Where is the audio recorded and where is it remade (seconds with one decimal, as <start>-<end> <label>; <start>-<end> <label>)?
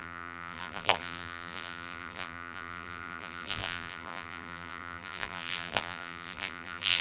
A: 0.0-7.0 remade